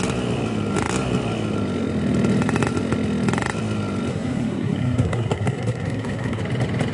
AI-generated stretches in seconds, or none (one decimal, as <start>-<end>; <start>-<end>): 4.1-6.4